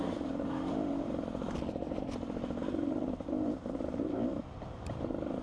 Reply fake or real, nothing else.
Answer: fake